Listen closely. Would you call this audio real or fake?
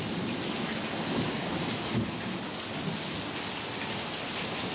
real